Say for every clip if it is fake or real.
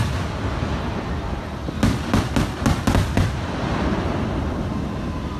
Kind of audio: real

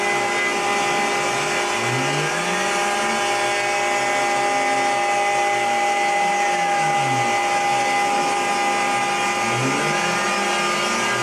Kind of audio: real